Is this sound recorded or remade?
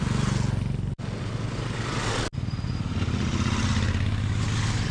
recorded